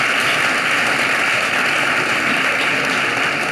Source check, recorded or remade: recorded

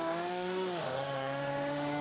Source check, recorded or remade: remade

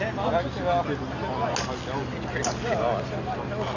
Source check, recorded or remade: recorded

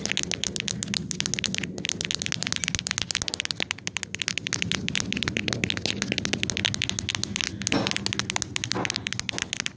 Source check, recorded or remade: recorded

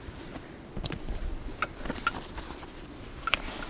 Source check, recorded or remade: recorded